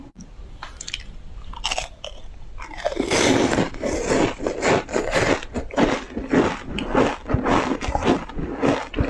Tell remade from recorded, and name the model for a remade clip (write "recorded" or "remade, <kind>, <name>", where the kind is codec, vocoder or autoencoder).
recorded